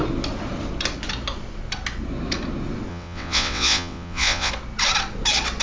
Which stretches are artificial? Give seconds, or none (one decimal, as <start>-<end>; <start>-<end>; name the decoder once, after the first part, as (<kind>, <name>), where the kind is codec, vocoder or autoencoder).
2.9-4.5 (vocoder, WaveNeXt)